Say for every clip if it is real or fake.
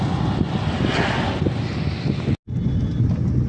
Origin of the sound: real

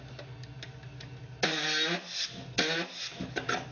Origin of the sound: real